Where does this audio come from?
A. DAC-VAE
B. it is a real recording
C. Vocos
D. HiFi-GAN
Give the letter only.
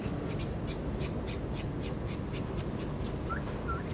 B